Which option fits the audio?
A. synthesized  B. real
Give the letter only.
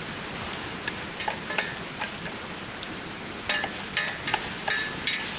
B